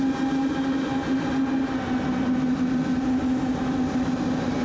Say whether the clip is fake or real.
real